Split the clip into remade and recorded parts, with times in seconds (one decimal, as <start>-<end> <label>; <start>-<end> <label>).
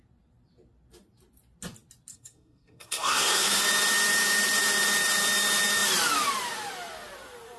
0.0-2.1 recorded; 2.1-3.6 remade; 3.6-7.6 recorded